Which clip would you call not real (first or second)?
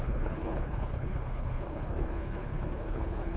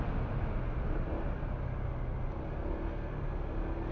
first